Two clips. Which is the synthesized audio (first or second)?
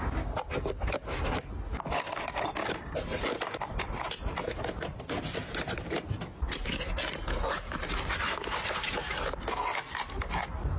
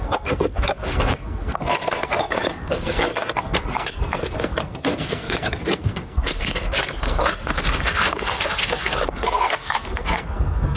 second